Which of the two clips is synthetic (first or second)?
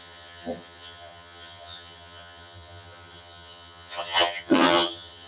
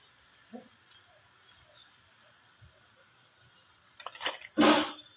first